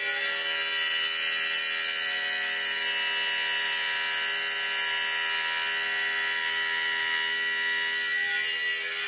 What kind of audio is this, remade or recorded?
recorded